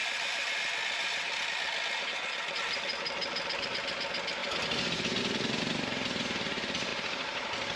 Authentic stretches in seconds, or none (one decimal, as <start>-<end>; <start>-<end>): 0.0-4.4; 5.2-6.9